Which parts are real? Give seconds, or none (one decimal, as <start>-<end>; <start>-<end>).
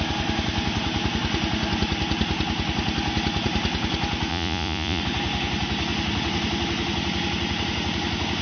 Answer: 0.0-4.3; 5.0-8.4